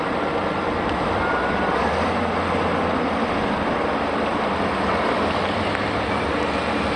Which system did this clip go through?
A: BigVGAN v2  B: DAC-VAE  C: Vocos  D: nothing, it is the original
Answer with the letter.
D